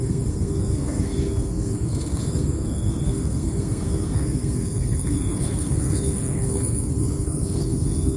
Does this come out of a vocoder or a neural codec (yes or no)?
yes